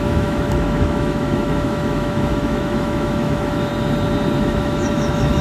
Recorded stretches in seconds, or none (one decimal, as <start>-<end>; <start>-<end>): 3.7-4.4